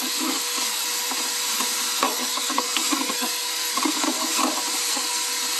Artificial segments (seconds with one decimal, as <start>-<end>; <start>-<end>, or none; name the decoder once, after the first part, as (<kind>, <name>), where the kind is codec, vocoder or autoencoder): 0.0-0.8 (codec, SNAC); 2.0-4.4; 4.9-5.6

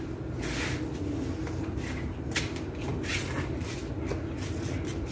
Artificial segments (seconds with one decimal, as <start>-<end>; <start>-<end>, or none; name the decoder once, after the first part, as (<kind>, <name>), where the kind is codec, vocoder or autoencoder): none

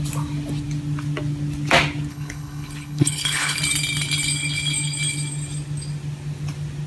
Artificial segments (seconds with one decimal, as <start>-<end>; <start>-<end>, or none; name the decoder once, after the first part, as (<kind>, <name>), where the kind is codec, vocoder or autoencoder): 2.1-3.6 (codec, HILCodec)

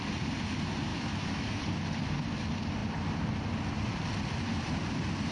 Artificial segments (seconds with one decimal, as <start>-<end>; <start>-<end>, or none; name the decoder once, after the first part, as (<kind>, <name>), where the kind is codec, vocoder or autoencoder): 0.9-1.6 (autoencoder, DAC-VAE)

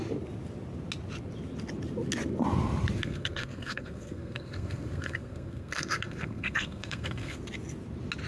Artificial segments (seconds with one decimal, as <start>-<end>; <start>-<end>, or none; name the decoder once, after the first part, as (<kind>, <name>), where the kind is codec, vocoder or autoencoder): 3.0-7.4 (codec, SNAC)

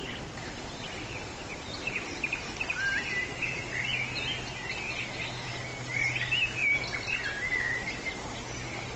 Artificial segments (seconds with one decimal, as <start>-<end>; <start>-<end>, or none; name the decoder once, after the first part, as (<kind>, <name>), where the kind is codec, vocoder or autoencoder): none

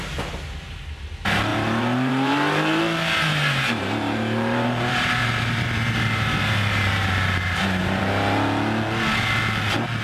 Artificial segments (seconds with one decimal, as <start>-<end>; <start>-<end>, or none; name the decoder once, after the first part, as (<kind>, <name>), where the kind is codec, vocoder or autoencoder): 1.5-2.8 (vocoder, BigVGAN v2); 3.3-8.0